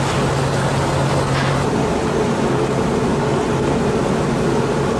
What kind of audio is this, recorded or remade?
recorded